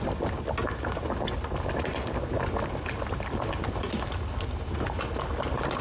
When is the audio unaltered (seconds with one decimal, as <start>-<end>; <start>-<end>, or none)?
0.0-5.8

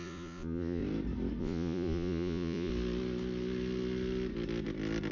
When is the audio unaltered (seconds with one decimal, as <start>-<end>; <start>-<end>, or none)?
0.8-1.4; 2.7-5.1

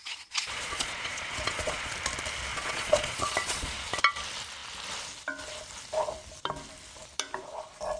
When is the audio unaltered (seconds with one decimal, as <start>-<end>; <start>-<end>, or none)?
1.9-2.5; 3.9-8.0